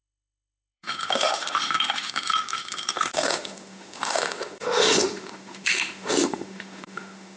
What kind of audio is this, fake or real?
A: fake